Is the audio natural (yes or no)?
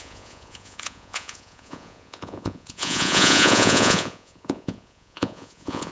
no